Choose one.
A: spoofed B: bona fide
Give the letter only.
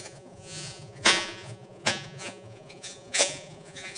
A